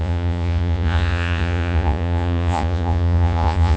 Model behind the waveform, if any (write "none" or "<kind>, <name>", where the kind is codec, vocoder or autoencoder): vocoder, Vocos